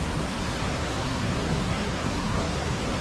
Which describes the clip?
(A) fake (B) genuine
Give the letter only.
A